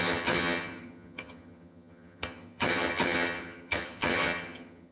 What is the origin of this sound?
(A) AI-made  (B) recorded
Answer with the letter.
A